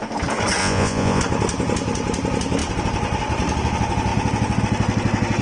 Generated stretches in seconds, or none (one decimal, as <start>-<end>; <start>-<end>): 0.6-1.2